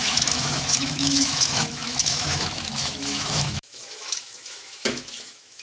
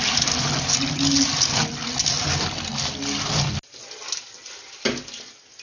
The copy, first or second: first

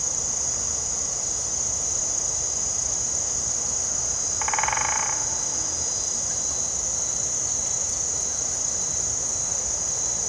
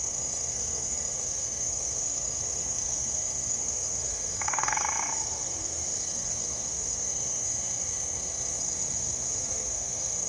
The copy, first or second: second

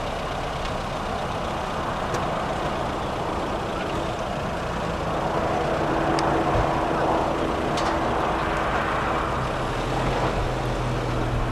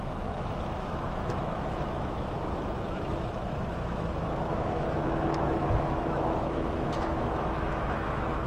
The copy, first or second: second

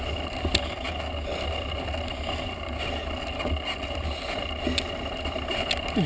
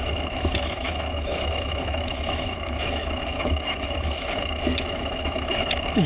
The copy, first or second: second